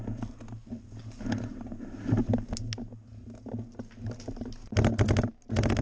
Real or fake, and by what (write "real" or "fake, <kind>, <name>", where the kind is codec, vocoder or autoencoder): real